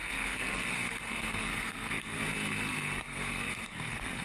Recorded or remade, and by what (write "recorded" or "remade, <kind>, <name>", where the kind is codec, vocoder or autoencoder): remade, codec, SNAC